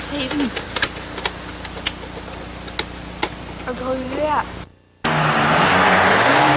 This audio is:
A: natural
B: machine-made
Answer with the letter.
A